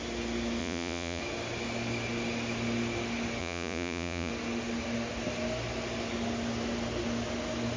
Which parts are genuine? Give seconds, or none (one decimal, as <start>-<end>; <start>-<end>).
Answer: 0.0-0.6; 1.2-3.4; 4.3-7.8